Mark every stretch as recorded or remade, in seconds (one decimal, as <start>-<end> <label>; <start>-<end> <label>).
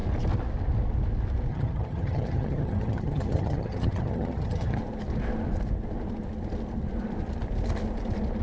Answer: 0.0-1.5 recorded; 1.5-4.8 remade; 4.8-8.4 recorded